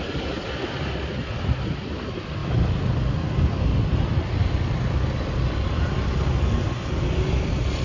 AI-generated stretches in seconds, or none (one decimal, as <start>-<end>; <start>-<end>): none